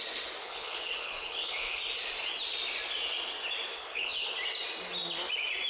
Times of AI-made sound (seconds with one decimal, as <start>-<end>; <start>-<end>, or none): 0.4-1.8; 3.8-4.3